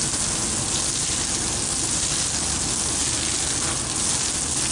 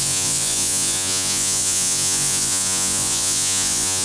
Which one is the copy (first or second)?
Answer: second